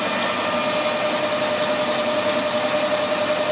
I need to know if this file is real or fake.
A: real